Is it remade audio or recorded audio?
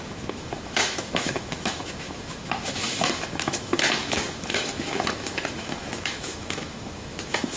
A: remade